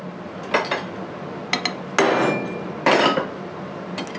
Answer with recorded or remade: recorded